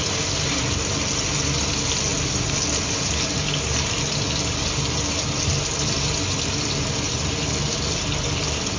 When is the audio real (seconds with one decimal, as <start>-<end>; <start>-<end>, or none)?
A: 0.0-8.8